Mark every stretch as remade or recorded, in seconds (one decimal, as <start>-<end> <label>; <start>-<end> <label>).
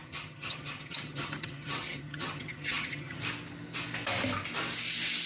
0.0-3.2 remade; 3.2-5.3 recorded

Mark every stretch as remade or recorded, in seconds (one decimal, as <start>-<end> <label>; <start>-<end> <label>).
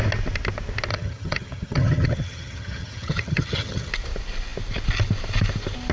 0.0-0.9 recorded; 0.9-3.9 remade; 3.9-5.9 recorded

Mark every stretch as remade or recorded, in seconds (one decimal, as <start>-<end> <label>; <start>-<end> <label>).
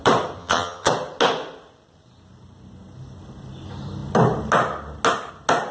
0.0-0.4 recorded; 0.4-0.9 remade; 0.9-5.7 recorded